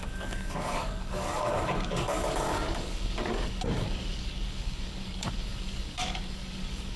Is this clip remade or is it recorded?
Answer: remade